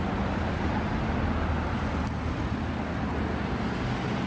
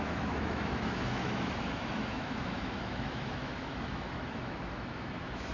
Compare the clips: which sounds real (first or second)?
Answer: first